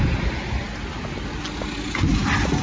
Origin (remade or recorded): recorded